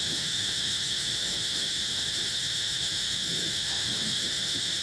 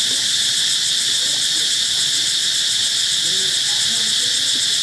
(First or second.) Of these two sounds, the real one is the second